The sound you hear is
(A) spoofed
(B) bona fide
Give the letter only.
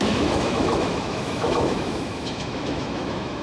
A